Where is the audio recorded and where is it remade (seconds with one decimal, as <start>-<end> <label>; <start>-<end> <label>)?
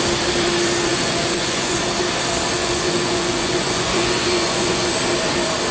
0.0-0.9 recorded; 0.9-1.8 remade; 1.8-2.6 recorded; 2.6-4.9 remade; 4.9-5.7 recorded